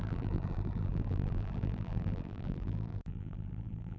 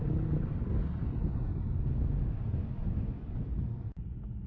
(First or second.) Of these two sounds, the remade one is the first